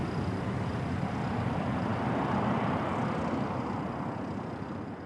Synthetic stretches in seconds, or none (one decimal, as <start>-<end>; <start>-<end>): none